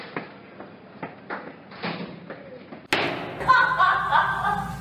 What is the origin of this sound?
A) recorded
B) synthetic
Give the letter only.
A